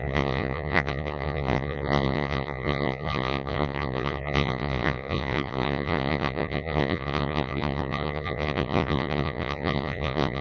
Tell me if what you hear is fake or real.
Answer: fake